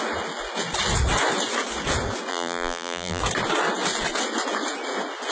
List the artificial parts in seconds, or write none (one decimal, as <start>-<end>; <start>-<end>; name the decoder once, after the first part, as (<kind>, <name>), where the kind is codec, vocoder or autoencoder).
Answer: 2.3-3.2 (vocoder, BigVGAN v2)